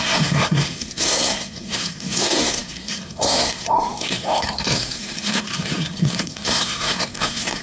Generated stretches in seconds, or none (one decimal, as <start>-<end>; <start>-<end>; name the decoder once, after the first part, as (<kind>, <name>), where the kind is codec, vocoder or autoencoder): 0.0-7.6 (codec, SNAC)